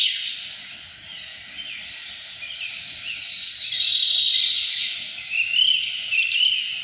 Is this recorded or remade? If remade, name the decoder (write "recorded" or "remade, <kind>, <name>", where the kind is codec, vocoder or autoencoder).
recorded